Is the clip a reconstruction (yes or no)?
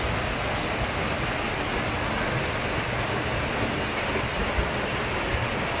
no